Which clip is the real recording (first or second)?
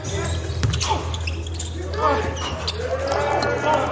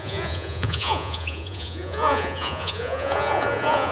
first